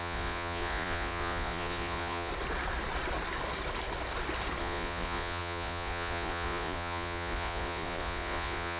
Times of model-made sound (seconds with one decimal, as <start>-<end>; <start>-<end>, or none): 0.0-2.3; 4.6-8.8